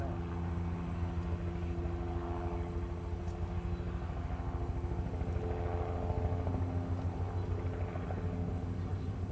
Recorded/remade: recorded